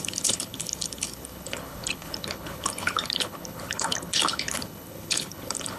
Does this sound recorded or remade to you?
remade